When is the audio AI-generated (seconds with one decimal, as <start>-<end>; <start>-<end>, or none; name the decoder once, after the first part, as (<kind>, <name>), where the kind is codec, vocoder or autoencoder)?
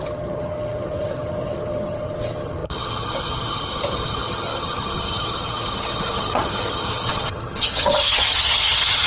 0.0-9.1 (vocoder, HiFi-GAN)